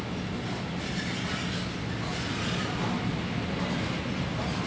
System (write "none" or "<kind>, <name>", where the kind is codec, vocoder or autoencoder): none